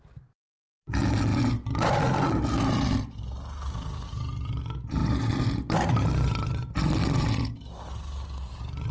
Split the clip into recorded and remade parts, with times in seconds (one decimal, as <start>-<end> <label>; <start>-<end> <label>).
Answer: 0.0-8.9 recorded